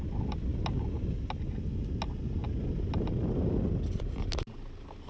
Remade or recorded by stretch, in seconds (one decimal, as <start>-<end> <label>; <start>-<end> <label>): 0.0-5.1 recorded